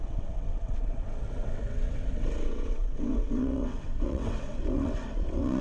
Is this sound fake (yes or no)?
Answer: yes